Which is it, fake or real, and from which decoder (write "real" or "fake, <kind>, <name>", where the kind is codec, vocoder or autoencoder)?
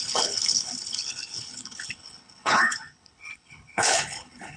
fake, codec, HILCodec